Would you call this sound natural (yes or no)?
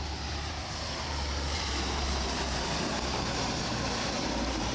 no